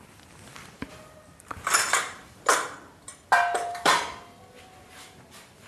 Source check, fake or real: fake